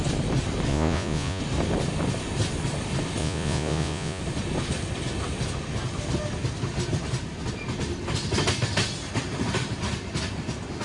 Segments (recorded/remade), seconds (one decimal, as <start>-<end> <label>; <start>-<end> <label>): 0.0-0.7 recorded; 0.7-1.4 remade; 1.4-3.2 recorded; 3.2-4.2 remade; 4.2-10.8 recorded